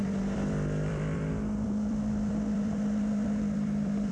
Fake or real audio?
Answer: fake